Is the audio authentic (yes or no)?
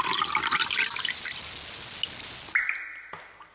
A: yes